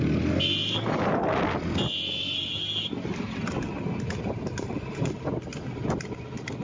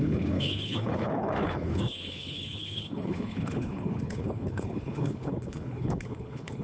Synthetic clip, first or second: second